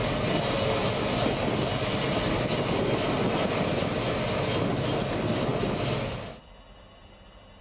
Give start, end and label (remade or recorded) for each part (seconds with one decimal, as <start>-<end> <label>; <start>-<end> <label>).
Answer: 0.0-7.6 recorded